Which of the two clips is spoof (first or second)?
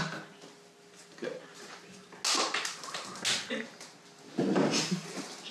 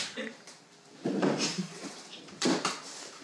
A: second